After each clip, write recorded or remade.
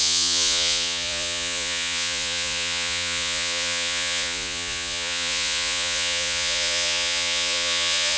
remade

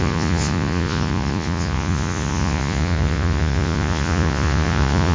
remade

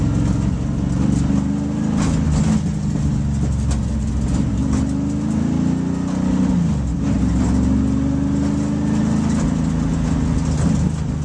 recorded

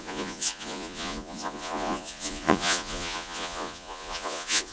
remade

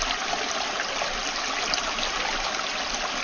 recorded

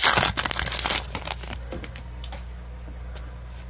recorded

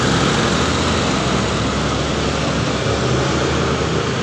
recorded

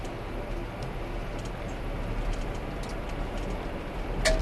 recorded